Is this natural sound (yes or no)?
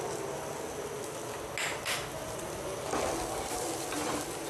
yes